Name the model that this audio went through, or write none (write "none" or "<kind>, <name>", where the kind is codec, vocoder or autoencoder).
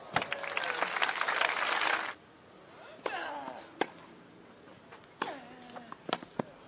none